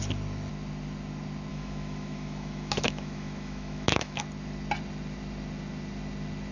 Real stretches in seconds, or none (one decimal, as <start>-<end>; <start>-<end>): 0.0-1.5; 4.2-6.5

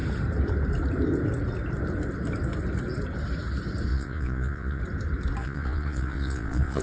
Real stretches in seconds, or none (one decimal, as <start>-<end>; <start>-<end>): 0.0-3.9; 4.8-5.4

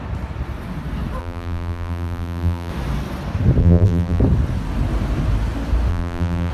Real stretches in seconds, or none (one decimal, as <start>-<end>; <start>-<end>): 0.0-1.2; 2.7-3.6; 4.2-5.9

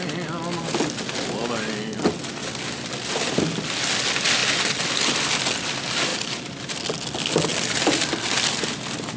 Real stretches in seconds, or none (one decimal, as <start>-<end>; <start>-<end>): 0.0-6.1; 6.8-7.5; 8.1-9.2

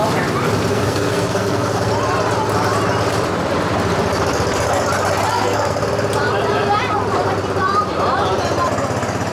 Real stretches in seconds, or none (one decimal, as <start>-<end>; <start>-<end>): 0.0-0.7; 1.9-5.3; 5.9-9.3

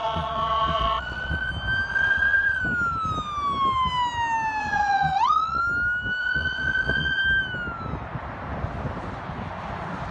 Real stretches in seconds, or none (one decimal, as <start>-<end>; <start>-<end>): 1.5-1.9; 2.6-4.6; 5.6-6.2; 7.2-10.1